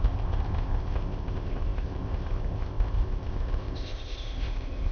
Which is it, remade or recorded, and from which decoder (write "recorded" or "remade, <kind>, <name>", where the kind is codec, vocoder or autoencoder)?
remade, codec, ZipCodec